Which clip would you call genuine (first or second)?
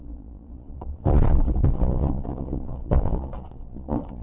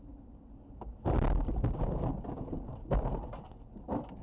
second